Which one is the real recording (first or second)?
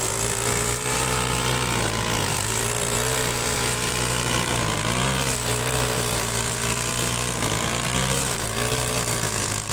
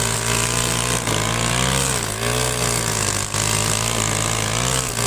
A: second